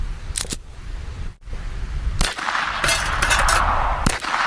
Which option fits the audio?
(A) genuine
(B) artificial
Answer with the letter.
A